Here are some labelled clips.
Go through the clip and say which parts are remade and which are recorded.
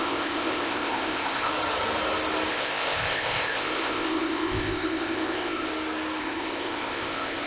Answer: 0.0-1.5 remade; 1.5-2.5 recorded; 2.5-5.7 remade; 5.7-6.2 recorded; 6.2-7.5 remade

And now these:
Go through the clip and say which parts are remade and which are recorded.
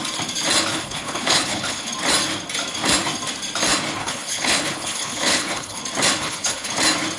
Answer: 0.0-0.7 recorded; 0.7-1.9 remade; 1.9-4.0 recorded; 4.0-5.8 remade; 5.8-6.2 recorded; 6.2-6.7 remade; 6.7-7.2 recorded